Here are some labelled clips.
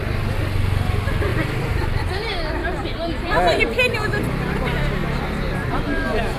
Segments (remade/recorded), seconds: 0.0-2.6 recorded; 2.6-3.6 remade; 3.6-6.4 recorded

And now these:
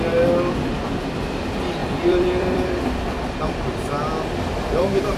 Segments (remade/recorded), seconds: 0.0-1.8 recorded; 1.8-4.0 remade; 4.0-5.2 recorded